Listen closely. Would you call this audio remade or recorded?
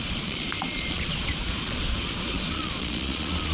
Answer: remade